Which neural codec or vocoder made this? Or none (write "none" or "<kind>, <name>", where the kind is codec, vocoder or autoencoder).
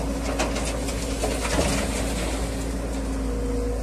none